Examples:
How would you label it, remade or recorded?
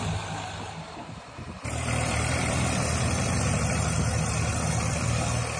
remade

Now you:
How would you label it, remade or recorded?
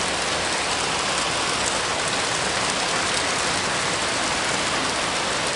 recorded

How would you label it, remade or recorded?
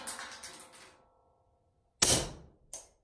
recorded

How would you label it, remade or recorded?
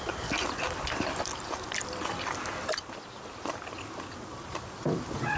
recorded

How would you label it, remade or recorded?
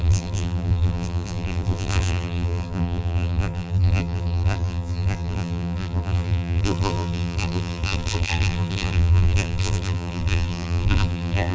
remade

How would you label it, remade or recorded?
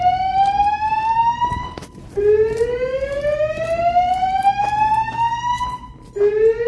recorded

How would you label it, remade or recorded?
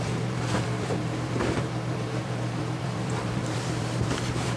remade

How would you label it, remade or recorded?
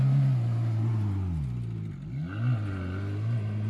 recorded